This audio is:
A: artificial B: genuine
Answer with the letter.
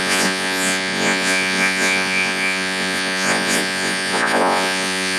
A